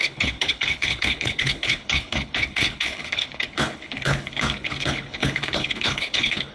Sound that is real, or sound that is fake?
fake